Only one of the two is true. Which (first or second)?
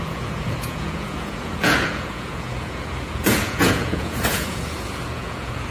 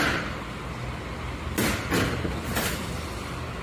second